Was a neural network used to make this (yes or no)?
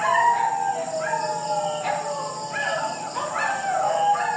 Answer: no